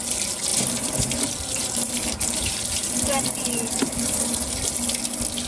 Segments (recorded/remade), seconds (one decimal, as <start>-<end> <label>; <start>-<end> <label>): 0.0-0.5 recorded; 0.5-1.1 remade; 1.1-1.5 recorded; 1.5-4.6 remade; 4.6-5.5 recorded